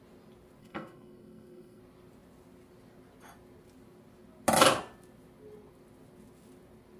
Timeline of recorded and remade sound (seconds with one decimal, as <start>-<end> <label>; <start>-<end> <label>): 0.0-0.6 recorded; 0.6-1.8 remade; 1.8-7.0 recorded